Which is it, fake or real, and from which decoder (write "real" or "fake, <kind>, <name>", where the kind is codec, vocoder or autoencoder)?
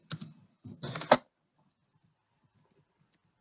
real